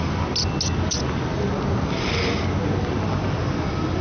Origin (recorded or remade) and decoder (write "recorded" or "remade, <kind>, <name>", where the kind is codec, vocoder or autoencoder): recorded